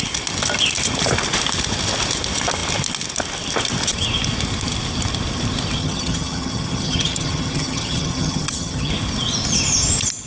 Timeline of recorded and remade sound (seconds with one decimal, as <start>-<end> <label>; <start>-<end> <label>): 0.0-5.8 recorded; 5.8-8.9 remade; 8.9-10.3 recorded